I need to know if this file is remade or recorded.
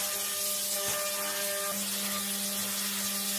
recorded